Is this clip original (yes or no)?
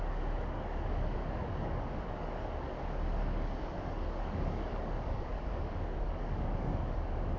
no